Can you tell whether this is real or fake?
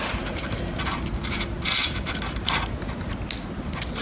real